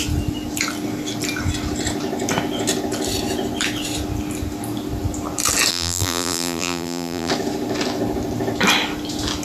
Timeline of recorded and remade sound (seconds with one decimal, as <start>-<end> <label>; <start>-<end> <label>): 0.0-5.7 recorded; 5.7-7.3 remade; 7.3-9.4 recorded